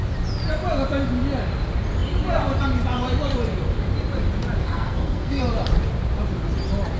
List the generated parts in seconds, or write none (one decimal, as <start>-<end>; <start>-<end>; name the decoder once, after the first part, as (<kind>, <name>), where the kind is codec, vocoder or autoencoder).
4.6-5.4 (codec, SNAC)